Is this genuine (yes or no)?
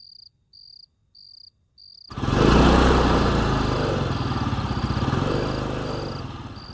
yes